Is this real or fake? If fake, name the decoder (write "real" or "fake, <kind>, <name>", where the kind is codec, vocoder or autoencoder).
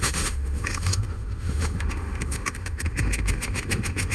fake, autoencoder, DAC-VAE